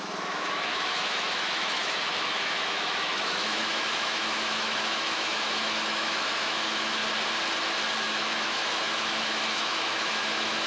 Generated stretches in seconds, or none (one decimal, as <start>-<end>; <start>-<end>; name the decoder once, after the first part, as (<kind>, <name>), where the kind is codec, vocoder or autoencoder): 0.0-7.0 (autoencoder, DAC-VAE); 8.0-10.7